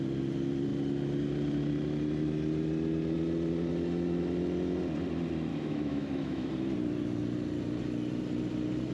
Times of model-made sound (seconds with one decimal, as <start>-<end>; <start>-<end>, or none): 5.5-6.5